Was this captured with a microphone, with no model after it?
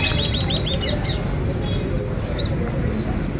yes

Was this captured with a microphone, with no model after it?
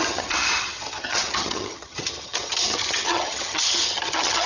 no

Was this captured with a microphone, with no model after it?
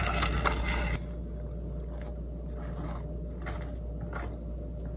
yes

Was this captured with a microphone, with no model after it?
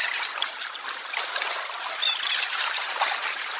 yes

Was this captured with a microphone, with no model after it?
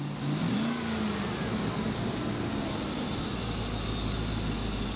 yes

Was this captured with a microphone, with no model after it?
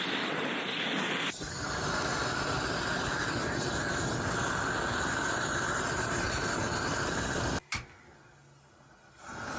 yes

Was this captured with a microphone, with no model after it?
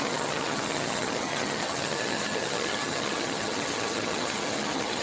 no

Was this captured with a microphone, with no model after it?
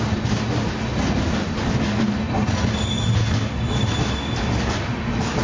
yes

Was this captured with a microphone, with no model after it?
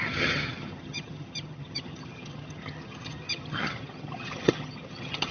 no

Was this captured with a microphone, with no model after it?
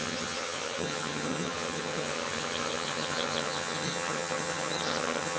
no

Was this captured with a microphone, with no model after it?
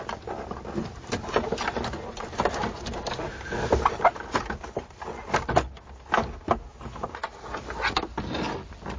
yes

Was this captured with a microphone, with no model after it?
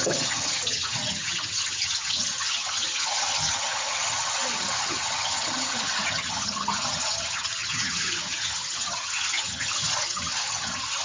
no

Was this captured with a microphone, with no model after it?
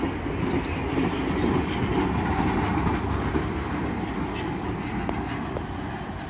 yes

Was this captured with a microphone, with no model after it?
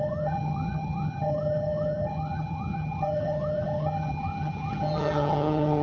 no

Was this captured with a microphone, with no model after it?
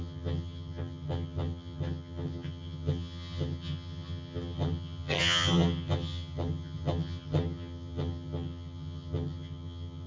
no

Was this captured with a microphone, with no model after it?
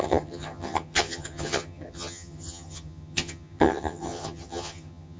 no